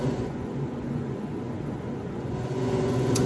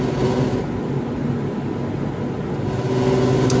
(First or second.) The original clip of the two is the second